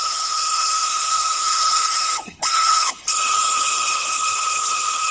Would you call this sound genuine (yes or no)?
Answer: no